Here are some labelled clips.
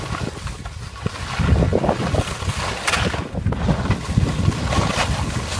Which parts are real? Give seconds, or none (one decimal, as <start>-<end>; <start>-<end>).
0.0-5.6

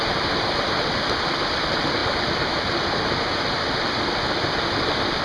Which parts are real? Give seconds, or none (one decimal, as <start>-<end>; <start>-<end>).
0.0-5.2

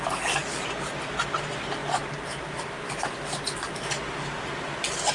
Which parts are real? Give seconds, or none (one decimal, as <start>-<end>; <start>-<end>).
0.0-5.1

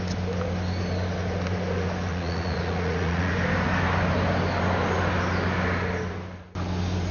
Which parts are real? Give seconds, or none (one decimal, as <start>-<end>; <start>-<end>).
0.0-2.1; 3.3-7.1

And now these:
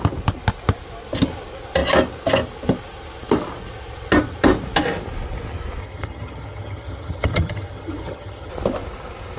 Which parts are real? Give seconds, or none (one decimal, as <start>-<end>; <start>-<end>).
0.0-5.8; 8.5-9.4

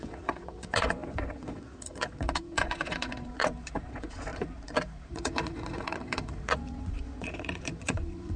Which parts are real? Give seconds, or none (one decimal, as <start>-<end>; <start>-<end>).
none

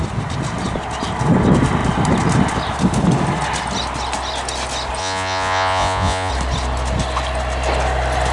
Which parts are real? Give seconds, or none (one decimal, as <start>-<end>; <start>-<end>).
0.0-5.0; 6.3-8.3

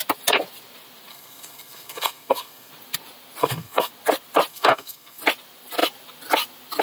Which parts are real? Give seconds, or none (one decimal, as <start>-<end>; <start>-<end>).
0.0-1.1; 2.7-3.4; 3.9-4.5; 5.2-6.8